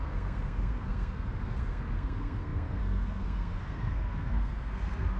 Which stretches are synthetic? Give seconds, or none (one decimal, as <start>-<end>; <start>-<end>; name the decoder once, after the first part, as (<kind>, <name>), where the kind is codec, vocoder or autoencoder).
0.0-5.2 (codec, SNAC)